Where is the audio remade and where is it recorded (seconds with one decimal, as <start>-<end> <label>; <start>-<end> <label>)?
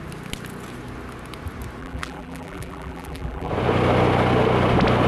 0.0-1.8 recorded; 1.8-3.5 remade; 3.5-5.1 recorded